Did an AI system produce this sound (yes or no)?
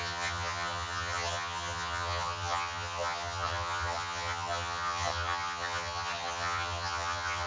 yes